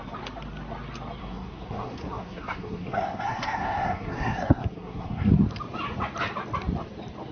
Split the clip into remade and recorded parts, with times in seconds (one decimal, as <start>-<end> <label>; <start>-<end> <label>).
0.0-1.2 recorded; 1.2-5.3 remade; 5.3-7.3 recorded